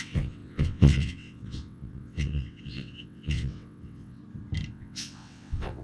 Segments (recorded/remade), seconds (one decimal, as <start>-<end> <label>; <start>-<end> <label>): 0.0-4.2 remade; 4.2-4.7 recorded; 4.7-5.8 remade